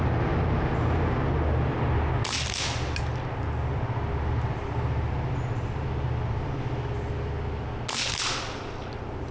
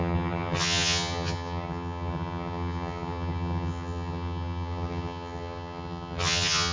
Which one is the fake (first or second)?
second